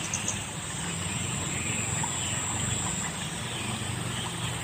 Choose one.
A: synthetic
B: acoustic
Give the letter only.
B